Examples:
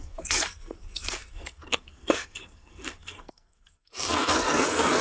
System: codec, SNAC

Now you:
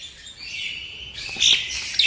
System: none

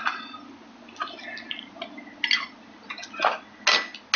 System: none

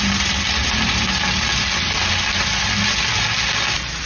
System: none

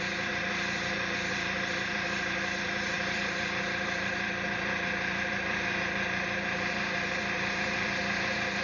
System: vocoder, BigVGAN v2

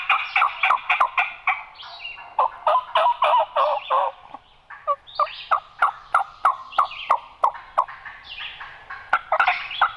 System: none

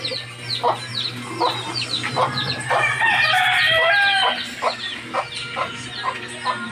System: none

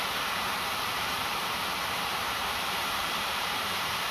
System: vocoder, BigVGAN v2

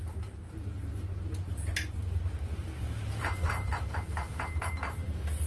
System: vocoder, BigVGAN v2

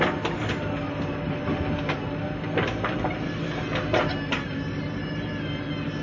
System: none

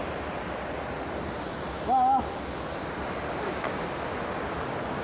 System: none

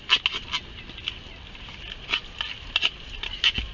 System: none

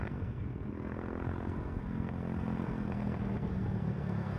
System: codec, SNAC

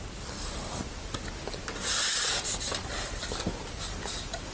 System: none